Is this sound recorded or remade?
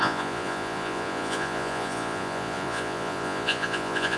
remade